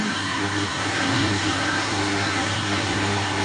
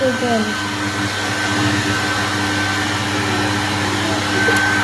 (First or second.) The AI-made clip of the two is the first